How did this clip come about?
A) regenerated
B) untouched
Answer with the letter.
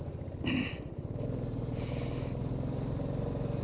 B